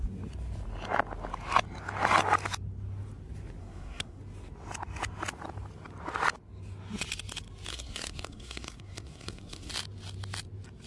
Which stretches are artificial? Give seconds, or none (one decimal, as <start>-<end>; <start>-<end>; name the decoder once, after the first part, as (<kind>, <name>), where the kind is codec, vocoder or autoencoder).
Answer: 3.6-4.2 (codec, SNAC); 7.7-9.7